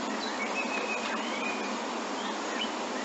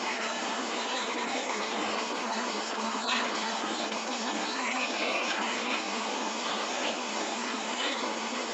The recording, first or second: first